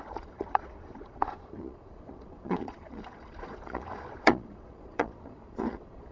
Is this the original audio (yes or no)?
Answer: no